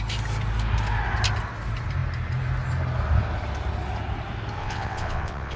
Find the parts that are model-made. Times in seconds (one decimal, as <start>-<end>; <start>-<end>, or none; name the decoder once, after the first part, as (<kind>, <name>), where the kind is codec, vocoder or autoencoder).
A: 4.6-5.6 (vocoder, WaveNeXt)